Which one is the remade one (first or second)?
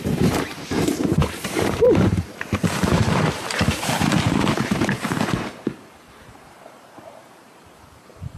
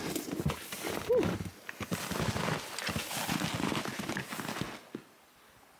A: first